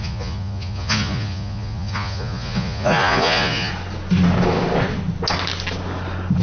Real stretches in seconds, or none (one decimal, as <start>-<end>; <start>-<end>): 3.7-6.4